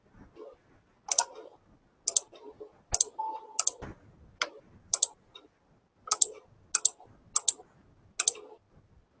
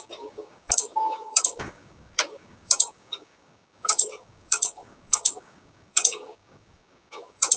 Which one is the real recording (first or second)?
first